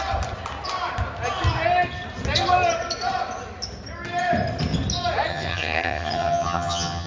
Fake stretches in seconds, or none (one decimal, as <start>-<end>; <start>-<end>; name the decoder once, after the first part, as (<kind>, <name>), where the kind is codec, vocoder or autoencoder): 5.3-7.1 (vocoder, HiFi-GAN)